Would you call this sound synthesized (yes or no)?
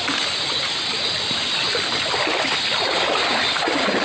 no